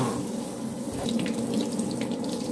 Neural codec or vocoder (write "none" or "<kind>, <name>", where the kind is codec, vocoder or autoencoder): none